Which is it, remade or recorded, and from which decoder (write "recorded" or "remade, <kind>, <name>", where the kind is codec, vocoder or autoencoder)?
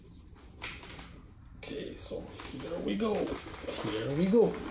recorded